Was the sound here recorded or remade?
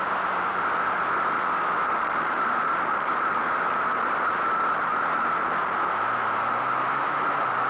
recorded